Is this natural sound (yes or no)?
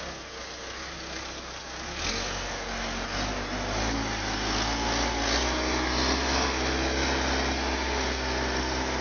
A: yes